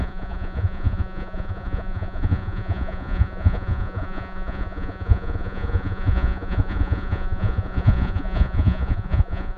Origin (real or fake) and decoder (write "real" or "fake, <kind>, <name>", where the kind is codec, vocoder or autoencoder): fake, vocoder, Vocos